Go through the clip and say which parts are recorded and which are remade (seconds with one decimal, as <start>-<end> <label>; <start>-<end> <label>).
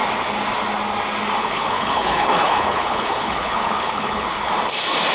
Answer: 0.0-1.4 recorded; 1.4-4.5 remade; 4.5-5.1 recorded